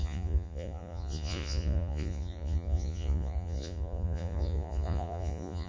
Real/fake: fake